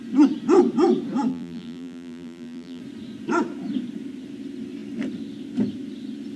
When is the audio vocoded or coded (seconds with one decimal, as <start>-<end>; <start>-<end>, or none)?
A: 1.3-2.8